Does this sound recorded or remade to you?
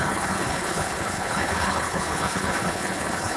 remade